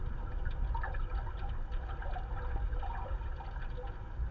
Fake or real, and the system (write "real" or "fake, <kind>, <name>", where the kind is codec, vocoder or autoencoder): real